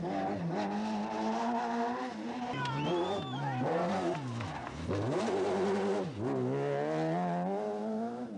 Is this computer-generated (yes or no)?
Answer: no